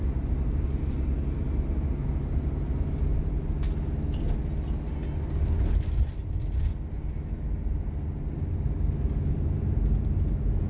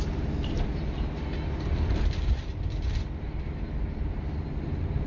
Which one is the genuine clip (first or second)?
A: first